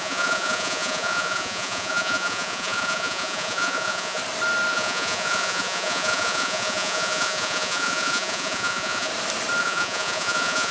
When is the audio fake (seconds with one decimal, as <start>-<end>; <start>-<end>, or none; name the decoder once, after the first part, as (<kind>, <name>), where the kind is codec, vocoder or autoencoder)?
0.0-4.2 (vocoder, Vocos); 4.7-9.1; 9.6-10.7